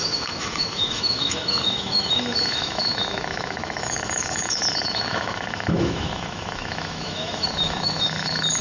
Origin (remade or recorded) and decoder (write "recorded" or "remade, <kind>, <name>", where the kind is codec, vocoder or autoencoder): remade, autoencoder, DAC-VAE